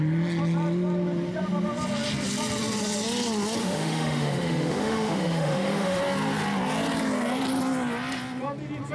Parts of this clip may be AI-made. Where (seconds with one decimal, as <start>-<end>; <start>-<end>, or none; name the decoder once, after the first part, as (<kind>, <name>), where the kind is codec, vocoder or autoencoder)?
3.6-6.0 (autoencoder, DAC-VAE)